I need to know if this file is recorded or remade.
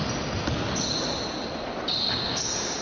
recorded